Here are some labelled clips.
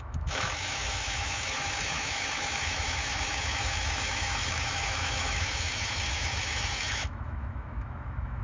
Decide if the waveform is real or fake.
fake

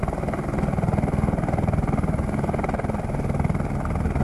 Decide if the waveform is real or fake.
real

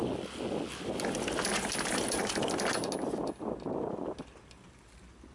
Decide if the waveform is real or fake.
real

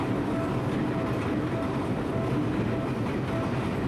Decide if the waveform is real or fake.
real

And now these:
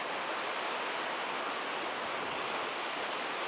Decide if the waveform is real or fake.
real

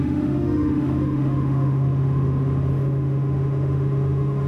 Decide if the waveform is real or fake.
fake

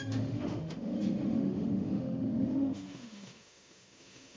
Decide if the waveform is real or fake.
fake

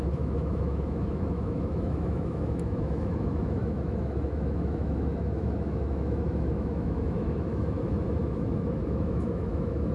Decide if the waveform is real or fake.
fake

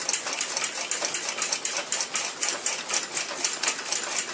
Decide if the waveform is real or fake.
real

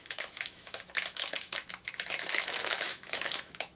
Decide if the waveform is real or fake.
fake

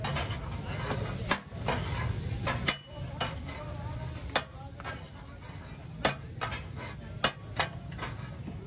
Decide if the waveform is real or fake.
real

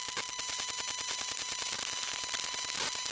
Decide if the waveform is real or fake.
real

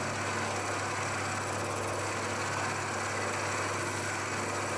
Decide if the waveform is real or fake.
real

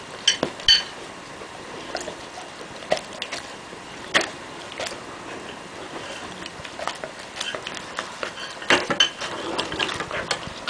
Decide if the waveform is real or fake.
real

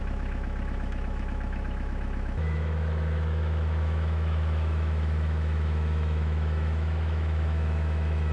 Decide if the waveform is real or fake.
fake